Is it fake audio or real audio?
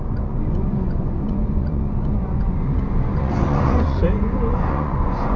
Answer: fake